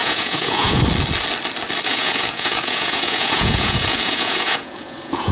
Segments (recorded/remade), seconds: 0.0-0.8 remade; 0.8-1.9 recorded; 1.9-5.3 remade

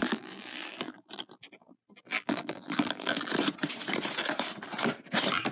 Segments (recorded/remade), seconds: 0.0-3.3 remade; 3.3-5.5 recorded